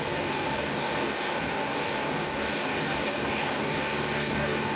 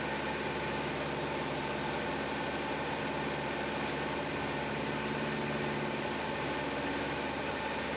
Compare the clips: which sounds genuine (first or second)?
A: second